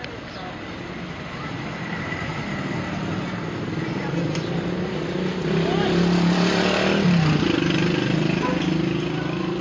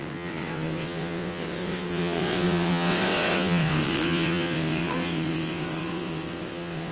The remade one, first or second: second